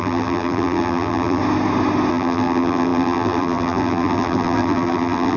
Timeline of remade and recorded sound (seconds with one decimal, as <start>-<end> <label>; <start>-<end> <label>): 0.0-1.4 remade; 1.4-2.1 recorded; 2.1-5.4 remade